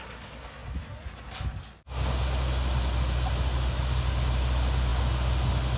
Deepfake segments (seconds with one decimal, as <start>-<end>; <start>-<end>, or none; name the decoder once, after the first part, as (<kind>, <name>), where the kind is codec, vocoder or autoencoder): none